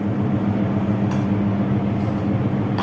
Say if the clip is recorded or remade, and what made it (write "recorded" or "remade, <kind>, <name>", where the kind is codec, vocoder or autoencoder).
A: recorded